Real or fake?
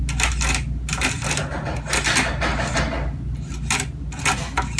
real